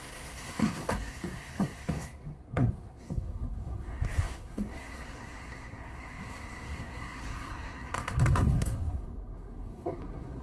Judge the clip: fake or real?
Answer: fake